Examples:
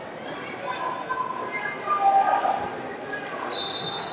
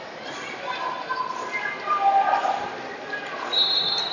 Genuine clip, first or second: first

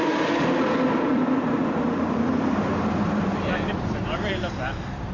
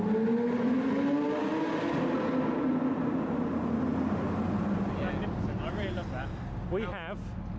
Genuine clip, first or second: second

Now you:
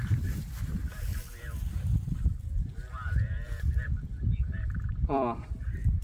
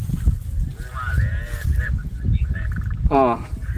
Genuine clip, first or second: second